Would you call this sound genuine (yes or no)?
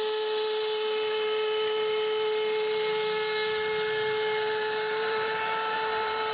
no